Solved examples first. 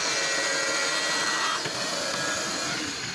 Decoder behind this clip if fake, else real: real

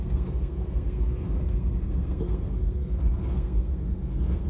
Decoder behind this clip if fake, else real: fake, codec, SNAC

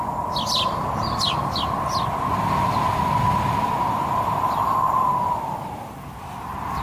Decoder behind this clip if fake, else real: real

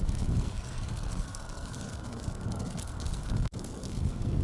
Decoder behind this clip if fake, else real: fake, codec, SNAC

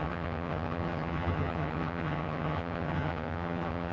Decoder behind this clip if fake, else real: fake, vocoder, HiFi-GAN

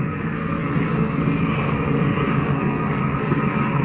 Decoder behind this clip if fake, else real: fake, codec, SNAC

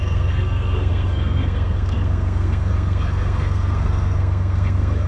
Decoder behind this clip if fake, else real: fake, codec, SNAC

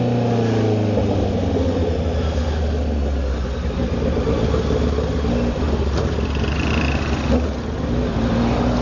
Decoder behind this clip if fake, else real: real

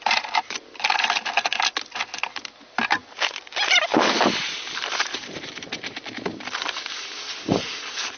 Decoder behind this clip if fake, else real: real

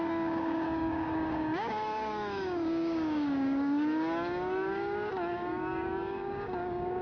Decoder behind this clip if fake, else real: fake, codec, DAC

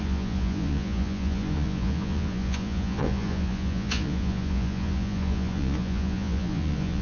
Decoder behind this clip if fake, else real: fake, vocoder, Vocos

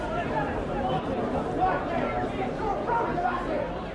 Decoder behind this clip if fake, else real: real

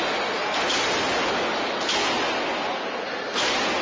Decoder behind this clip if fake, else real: real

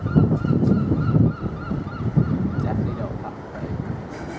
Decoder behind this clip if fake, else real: real